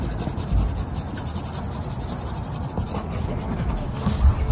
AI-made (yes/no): no